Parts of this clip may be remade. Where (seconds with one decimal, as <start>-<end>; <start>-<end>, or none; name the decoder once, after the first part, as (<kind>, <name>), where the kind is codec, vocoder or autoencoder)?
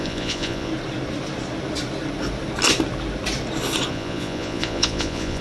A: 0.0-0.7 (vocoder, Vocos); 3.9-5.4